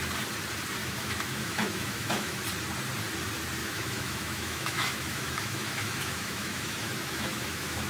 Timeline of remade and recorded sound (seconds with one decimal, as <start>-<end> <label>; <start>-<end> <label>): 0.0-0.8 recorded; 0.8-2.4 remade; 2.4-3.6 recorded; 3.6-7.9 remade